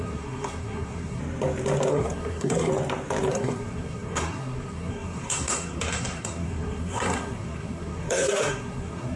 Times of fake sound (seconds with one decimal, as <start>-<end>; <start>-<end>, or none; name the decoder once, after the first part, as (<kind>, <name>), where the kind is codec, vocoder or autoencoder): 0.0-1.2 (codec, SNAC); 1.9-2.7; 3.3-9.2